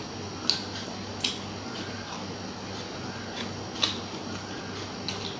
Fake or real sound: real